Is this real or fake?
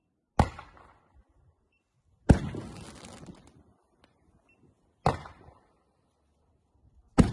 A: real